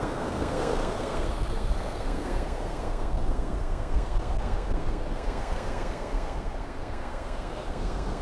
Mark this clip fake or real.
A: fake